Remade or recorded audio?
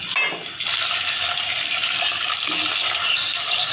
recorded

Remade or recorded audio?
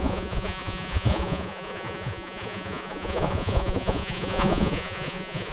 remade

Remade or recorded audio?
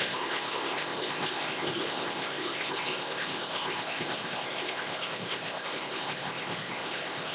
remade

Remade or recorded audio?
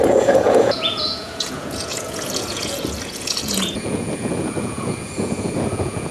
remade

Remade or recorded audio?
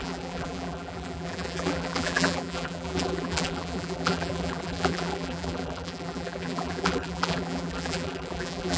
remade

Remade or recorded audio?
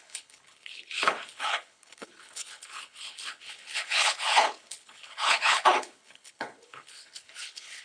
remade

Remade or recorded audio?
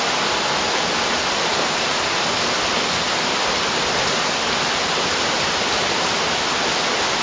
recorded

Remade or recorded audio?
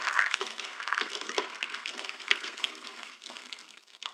remade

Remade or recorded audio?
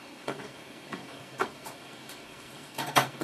remade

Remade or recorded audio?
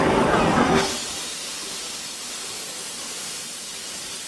recorded